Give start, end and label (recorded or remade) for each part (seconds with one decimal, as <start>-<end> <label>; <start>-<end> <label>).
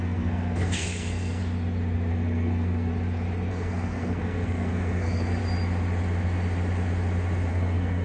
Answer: 0.0-1.4 remade; 1.4-2.1 recorded; 2.1-2.9 remade; 2.9-3.5 recorded; 3.5-5.4 remade; 5.4-7.5 recorded; 7.5-8.0 remade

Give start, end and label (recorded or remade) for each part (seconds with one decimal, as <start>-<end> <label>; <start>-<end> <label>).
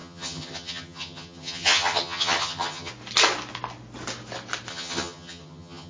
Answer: 0.0-2.9 remade; 2.9-4.7 recorded; 4.7-5.9 remade